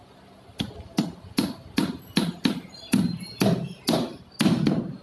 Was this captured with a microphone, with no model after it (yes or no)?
yes